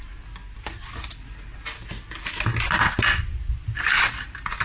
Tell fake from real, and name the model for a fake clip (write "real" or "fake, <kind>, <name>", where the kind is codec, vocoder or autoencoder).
real